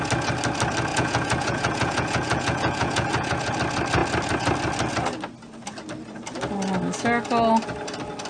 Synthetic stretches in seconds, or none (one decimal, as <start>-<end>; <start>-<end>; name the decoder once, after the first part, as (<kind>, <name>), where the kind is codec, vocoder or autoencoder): 0.9-3.5 (vocoder, Vocos)